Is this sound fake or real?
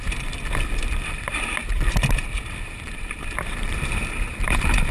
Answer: fake